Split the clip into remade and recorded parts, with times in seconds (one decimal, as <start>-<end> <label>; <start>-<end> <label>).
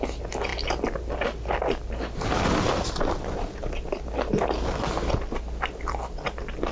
0.0-6.7 recorded